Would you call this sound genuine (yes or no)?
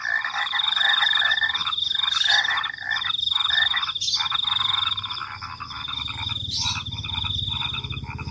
yes